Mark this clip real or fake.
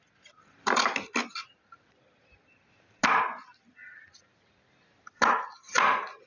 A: real